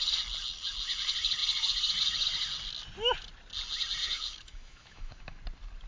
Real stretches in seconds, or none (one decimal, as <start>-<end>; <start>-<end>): 0.0-4.0; 5.4-5.9